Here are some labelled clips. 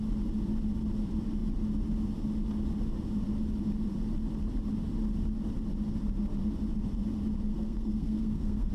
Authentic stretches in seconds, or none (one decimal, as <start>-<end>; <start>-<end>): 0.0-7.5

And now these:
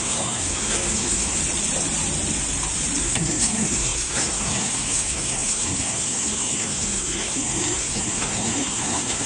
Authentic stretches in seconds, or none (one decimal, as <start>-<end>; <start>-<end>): 1.4-3.0

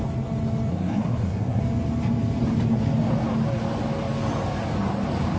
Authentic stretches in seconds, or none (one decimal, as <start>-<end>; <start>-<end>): 0.0-0.7; 1.6-5.4